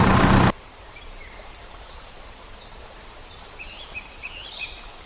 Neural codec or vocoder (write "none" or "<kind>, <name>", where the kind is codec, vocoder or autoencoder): vocoder, BigVGAN v2